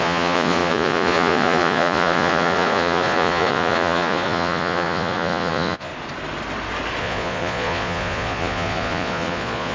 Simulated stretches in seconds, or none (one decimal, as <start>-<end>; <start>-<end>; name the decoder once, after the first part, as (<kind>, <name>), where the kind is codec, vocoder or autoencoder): 0.0-5.9 (vocoder, Vocos); 7.0-9.7

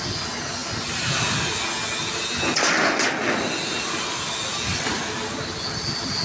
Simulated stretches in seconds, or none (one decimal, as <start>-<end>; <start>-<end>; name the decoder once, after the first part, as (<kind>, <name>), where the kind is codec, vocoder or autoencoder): none

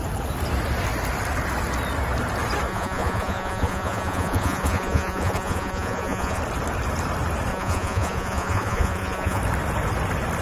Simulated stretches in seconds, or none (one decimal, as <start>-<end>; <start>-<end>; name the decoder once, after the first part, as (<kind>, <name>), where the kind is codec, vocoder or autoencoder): 2.7-6.4 (vocoder, Vocos); 7.5-9.4

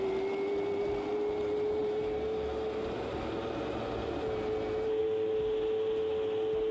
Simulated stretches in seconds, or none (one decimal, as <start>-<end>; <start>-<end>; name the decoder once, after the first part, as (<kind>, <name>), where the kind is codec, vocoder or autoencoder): none